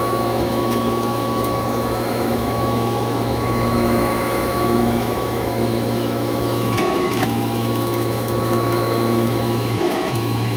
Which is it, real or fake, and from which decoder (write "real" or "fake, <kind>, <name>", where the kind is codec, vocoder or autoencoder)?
fake, autoencoder, DAC-VAE